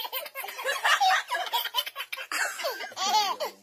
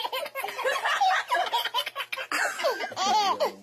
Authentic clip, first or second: second